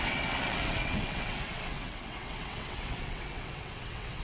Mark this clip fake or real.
fake